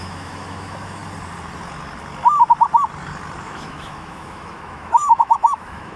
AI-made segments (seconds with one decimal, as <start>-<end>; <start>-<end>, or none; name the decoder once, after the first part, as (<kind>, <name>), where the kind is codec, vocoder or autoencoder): 0.0-1.0 (autoencoder, DAC-VAE); 3.4-6.0